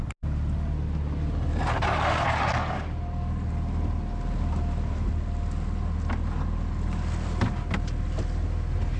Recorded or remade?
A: recorded